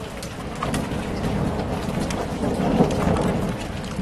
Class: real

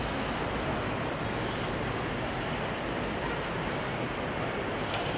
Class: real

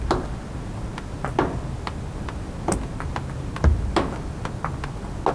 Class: real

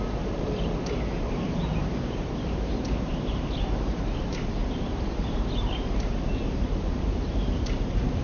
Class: fake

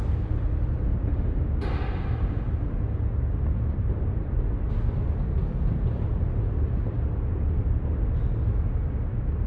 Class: real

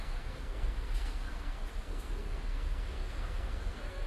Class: fake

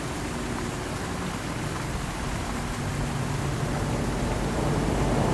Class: real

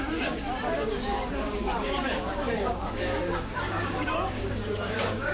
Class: fake